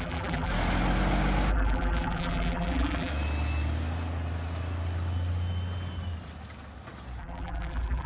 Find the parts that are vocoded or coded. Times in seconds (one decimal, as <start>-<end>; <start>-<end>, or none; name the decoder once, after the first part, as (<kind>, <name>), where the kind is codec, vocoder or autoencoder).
0.0-0.5 (vocoder, BigVGAN v2); 1.5-3.1; 7.2-8.1